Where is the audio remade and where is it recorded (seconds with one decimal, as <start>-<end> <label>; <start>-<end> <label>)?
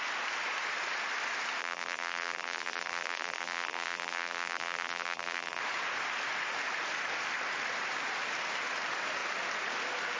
0.0-1.6 recorded; 1.6-5.6 remade; 5.6-10.2 recorded